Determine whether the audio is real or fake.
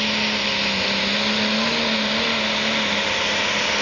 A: real